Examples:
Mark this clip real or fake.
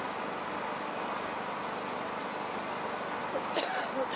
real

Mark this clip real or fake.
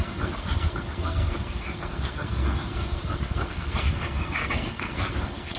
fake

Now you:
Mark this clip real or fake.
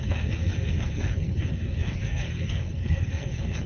fake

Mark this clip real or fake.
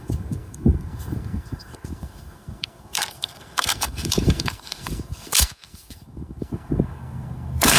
fake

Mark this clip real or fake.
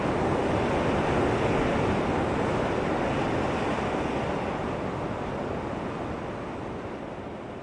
real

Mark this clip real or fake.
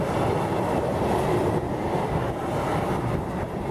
real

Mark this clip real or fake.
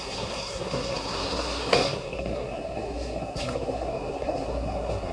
fake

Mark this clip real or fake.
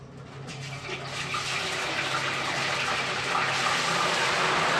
real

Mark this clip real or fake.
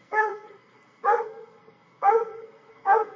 fake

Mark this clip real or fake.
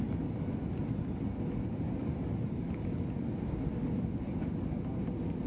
real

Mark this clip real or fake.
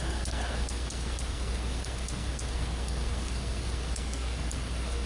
fake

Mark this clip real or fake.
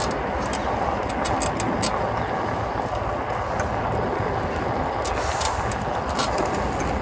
real